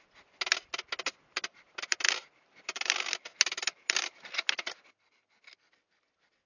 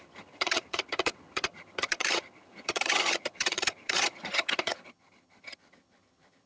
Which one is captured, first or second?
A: first